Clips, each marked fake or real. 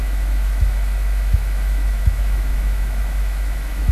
fake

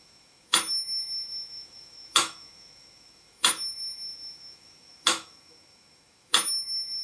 fake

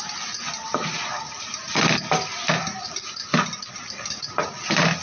real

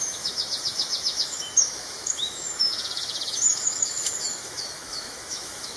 fake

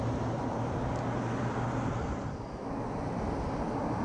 real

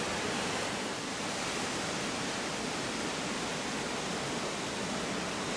real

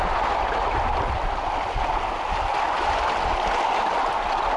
real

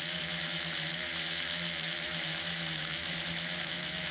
fake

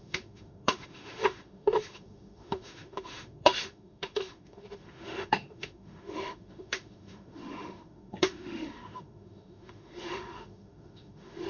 fake